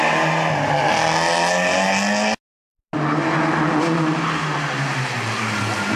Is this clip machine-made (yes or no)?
no